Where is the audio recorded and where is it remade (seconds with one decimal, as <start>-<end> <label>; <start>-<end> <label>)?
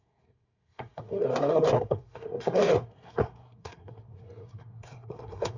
0.0-5.6 remade